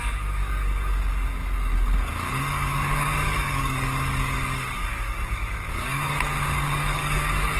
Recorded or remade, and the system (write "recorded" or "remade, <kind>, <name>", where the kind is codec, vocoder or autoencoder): remade, codec, DAC